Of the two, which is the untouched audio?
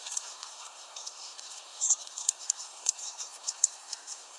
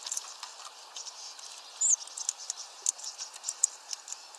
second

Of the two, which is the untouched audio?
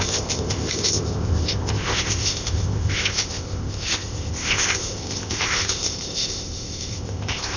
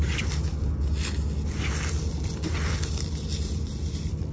second